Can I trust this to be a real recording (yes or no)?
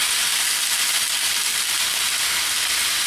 yes